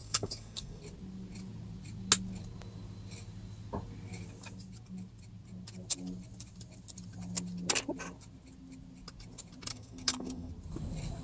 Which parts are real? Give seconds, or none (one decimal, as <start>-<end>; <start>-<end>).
0.8-9.7; 10.5-11.2